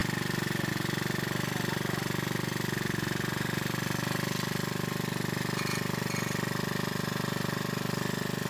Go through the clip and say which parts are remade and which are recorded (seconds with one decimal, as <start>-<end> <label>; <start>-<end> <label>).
0.0-8.5 recorded